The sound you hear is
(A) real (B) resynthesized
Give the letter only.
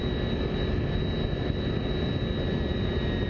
A